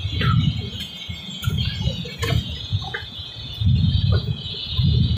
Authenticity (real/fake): fake